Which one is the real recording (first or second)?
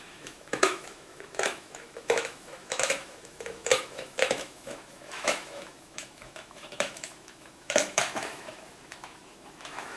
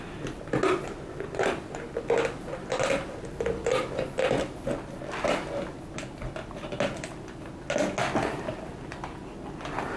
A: second